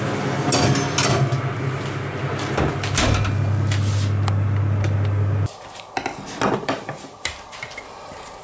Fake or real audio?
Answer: real